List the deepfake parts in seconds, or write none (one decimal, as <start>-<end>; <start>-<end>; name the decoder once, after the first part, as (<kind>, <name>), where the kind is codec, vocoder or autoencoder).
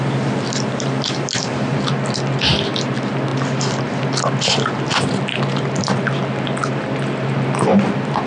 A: none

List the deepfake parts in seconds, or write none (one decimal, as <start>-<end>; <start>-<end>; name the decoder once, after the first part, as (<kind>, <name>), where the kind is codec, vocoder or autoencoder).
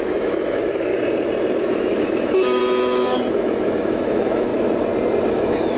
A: 0.0-0.9 (autoencoder, DAC-VAE); 1.6-2.6; 3.3-4.5; 5.3-5.8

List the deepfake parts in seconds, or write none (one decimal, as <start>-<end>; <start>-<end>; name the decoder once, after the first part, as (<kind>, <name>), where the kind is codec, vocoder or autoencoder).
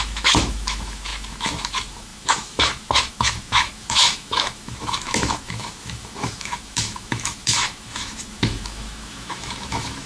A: 0.0-10.1 (autoencoder, DAC-VAE)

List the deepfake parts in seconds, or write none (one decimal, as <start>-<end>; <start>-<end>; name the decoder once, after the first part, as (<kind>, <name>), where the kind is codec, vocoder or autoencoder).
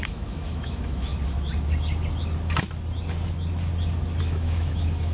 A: 0.0-1.1 (autoencoder, DAC-VAE); 4.2-5.1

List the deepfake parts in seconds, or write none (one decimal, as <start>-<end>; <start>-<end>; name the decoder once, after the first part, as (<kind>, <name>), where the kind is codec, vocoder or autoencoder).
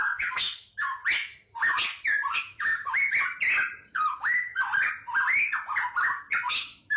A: 0.0-1.0 (autoencoder, DAC-VAE); 2.4-3.0; 3.9-4.5; 6.5-7.0